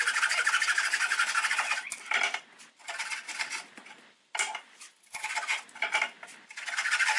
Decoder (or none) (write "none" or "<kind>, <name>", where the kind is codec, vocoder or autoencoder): none